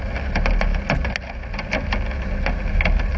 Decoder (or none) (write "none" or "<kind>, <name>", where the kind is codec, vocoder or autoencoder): none